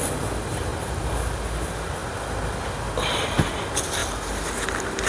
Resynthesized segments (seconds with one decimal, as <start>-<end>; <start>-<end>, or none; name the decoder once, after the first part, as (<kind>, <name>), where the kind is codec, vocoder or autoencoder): none